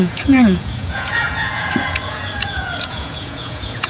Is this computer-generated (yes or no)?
yes